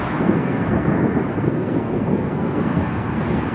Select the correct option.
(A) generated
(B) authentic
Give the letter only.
A